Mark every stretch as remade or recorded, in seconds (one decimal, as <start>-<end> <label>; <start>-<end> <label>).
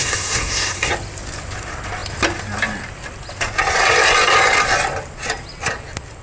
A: 0.0-0.9 remade; 0.9-6.2 recorded